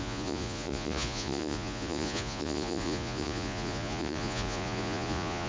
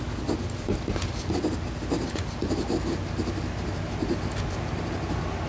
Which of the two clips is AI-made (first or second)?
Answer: first